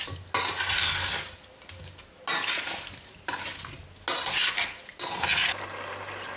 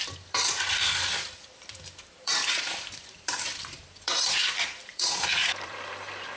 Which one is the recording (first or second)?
first